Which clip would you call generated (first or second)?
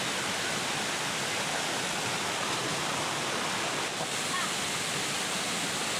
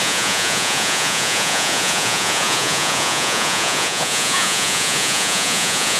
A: second